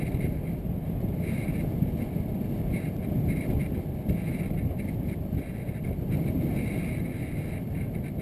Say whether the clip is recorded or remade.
recorded